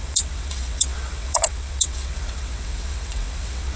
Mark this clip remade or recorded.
remade